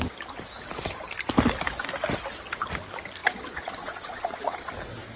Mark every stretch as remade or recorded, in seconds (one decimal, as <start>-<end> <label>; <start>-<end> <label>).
0.0-3.2 recorded; 3.2-4.7 remade; 4.7-5.2 recorded